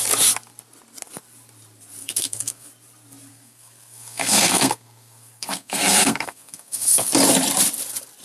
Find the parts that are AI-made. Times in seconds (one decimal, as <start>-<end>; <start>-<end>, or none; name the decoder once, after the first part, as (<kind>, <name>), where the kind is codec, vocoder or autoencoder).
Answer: 2.0-2.7 (codec, SNAC); 3.3-7.1